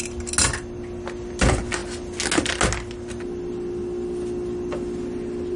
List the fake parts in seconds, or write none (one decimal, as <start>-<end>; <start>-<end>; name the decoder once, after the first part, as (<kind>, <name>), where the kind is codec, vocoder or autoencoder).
none